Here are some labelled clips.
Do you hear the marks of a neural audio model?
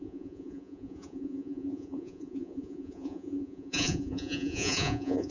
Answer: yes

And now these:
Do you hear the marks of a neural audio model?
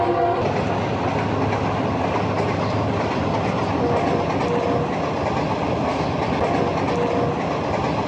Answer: no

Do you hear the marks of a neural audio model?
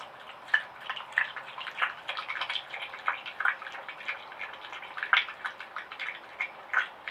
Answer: no